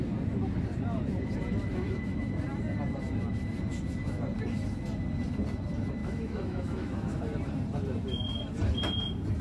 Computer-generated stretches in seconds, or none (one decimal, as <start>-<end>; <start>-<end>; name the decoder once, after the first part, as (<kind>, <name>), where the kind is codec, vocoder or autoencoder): 6.0-7.2 (autoencoder, DAC-VAE)